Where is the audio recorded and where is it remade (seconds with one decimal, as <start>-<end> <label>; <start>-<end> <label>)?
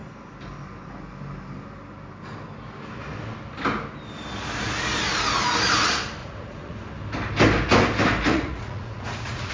0.0-6.2 recorded; 6.2-6.9 remade; 6.9-8.3 recorded; 8.3-9.5 remade